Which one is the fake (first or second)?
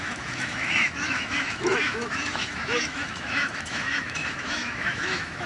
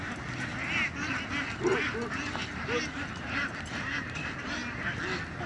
first